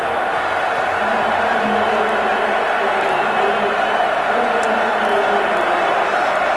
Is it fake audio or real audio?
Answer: real